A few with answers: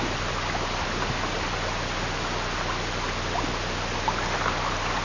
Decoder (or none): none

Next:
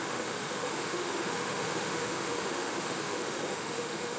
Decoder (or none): autoencoder, DAC-VAE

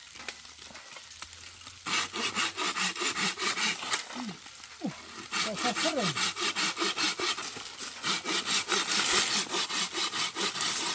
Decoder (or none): none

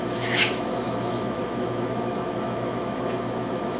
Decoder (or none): autoencoder, DAC-VAE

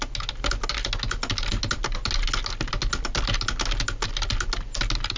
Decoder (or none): none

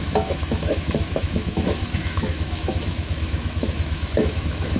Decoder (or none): autoencoder, DAC-VAE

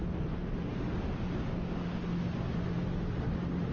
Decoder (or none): none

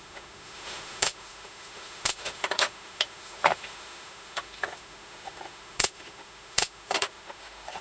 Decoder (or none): autoencoder, DAC-VAE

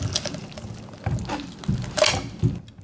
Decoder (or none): none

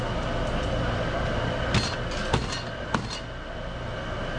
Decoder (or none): none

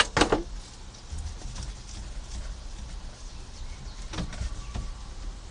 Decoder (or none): none